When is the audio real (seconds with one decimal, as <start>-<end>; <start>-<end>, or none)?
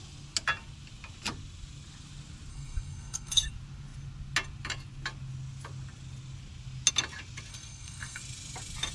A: 0.0-2.5; 3.5-7.5; 8.2-8.9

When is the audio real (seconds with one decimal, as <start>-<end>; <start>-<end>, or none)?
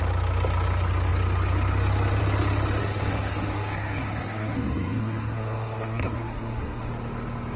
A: 0.0-2.8; 6.9-7.6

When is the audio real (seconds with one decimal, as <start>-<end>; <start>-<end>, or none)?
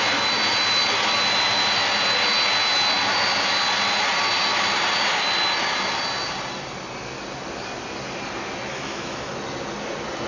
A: 0.0-8.7; 9.3-10.3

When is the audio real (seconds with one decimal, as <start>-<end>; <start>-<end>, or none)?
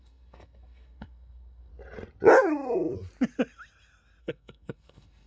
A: 1.7-4.2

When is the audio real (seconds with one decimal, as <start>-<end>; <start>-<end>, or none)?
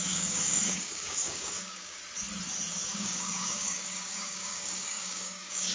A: 2.0-2.7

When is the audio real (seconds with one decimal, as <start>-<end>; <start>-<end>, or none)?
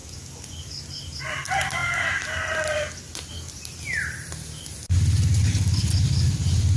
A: 0.0-6.8